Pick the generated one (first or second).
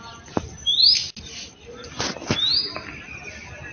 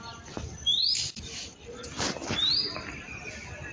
second